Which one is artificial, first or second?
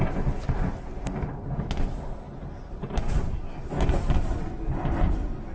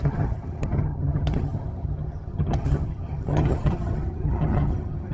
second